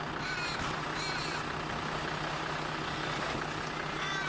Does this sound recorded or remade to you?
recorded